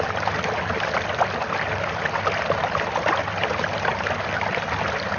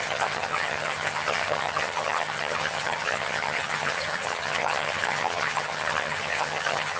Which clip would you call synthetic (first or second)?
second